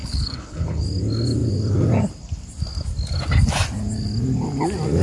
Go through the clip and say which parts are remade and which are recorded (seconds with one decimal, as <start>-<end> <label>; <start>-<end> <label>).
0.0-0.8 remade; 0.8-5.0 recorded